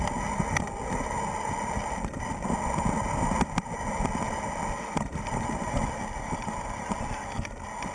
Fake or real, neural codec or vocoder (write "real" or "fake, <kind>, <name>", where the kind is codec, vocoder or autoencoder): real